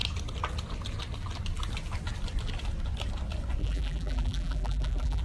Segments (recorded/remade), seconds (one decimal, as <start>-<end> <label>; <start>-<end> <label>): 0.0-3.6 recorded; 3.6-5.2 remade